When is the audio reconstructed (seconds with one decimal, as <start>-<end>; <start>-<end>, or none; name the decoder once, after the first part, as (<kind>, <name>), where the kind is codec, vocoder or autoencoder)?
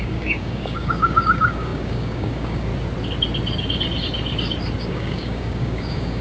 0.0-2.7 (codec, DAC); 4.8-6.2